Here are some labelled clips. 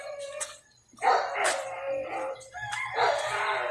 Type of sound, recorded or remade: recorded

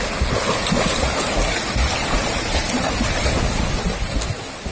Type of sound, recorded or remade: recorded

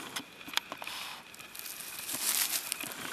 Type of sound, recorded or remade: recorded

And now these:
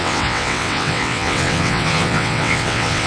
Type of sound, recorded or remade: remade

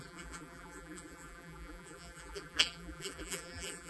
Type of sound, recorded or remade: remade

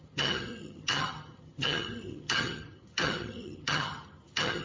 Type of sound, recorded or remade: remade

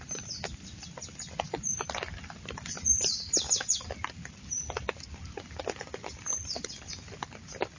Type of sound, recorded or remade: recorded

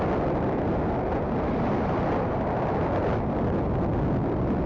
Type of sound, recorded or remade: recorded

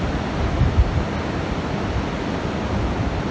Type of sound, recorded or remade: recorded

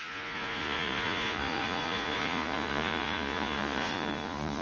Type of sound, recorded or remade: remade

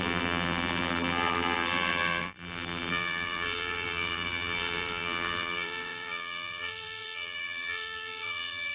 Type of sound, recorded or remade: remade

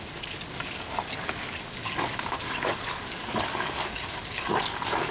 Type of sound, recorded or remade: remade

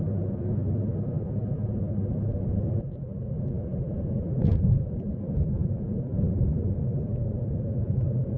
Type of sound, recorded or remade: recorded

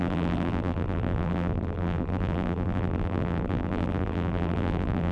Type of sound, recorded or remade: remade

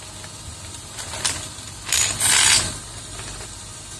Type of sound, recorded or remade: recorded